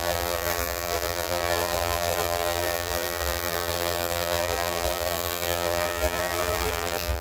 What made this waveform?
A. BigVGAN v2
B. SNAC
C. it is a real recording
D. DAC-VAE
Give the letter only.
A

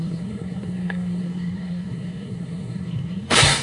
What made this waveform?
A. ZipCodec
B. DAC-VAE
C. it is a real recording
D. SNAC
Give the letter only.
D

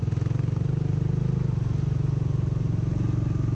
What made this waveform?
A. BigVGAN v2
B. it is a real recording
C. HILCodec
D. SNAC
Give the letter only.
B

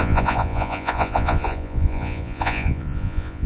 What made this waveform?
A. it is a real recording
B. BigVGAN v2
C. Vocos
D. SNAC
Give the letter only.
C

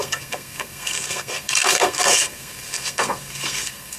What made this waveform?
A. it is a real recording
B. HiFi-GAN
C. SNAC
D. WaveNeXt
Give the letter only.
C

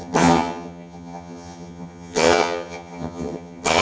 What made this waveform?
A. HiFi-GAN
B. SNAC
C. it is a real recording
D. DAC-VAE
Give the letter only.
A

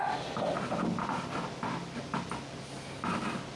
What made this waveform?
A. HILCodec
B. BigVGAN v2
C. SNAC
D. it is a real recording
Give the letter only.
D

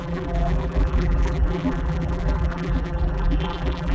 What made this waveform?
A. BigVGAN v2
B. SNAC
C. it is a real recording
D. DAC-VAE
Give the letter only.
A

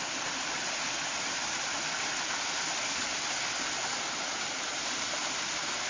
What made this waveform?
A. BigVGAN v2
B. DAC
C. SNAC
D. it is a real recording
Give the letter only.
D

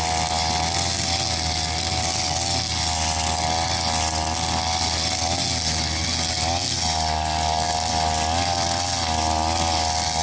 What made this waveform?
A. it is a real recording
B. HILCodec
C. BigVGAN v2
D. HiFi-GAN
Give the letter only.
A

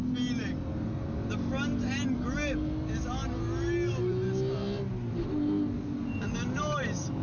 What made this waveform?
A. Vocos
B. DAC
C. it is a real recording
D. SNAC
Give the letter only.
C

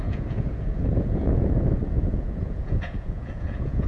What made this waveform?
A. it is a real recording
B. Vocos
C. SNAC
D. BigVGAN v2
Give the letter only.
B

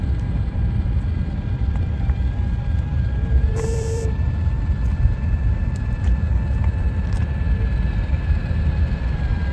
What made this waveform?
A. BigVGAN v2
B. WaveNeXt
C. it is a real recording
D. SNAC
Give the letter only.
A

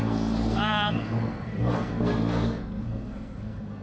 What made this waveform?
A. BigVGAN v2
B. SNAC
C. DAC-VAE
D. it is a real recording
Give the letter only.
B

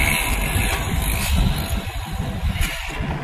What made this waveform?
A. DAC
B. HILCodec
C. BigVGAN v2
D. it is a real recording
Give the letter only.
D